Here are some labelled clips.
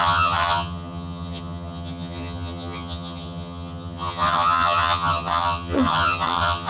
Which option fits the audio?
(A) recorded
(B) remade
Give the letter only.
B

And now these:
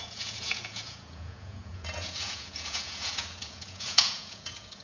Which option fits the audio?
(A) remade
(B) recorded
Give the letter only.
A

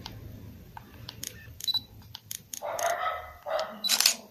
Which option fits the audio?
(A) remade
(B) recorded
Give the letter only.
A